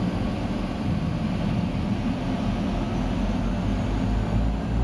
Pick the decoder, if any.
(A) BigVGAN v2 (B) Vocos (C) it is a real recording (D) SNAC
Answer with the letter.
C